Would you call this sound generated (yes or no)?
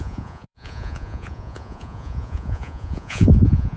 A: yes